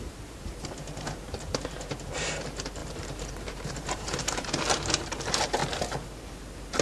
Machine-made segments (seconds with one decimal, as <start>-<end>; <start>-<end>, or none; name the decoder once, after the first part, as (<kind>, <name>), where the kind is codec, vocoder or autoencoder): 0.0-5.6 (vocoder, BigVGAN v2)